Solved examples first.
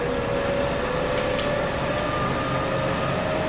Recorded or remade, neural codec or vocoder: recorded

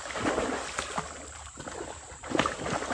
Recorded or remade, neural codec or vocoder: recorded